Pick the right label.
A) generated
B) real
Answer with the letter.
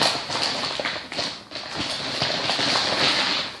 B